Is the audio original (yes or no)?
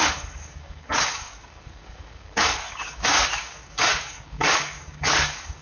no